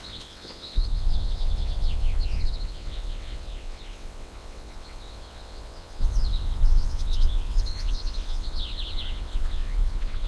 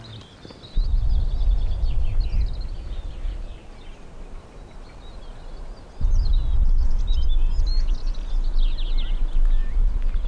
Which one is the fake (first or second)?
first